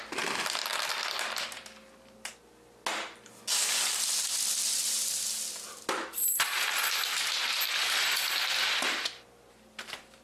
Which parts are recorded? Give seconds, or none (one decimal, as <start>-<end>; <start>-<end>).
0.0-10.2